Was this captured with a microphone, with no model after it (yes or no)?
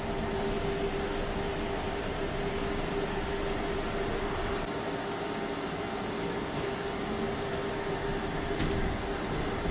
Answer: yes